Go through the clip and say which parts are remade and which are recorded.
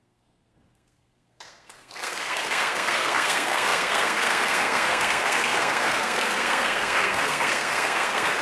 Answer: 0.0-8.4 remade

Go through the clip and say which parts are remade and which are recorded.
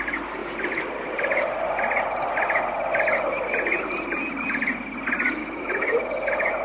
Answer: 0.0-5.4 recorded; 5.4-6.6 remade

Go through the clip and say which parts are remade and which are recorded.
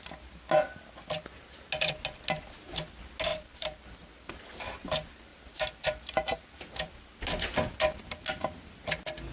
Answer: 0.0-3.3 recorded; 3.3-4.3 remade; 4.3-5.3 recorded; 5.3-6.9 remade; 6.9-9.3 recorded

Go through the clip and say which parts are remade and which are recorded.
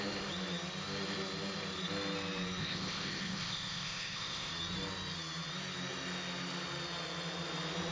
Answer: 0.0-2.6 recorded; 2.6-4.5 remade; 4.5-7.9 recorded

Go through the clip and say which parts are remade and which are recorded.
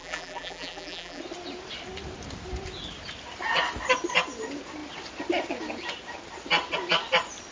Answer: 0.0-1.2 remade; 1.2-7.5 recorded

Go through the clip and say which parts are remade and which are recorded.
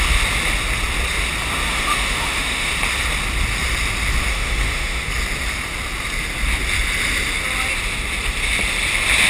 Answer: 0.0-1.7 recorded; 1.7-2.7 remade; 2.7-4.3 recorded; 4.3-5.1 remade; 5.1-9.3 recorded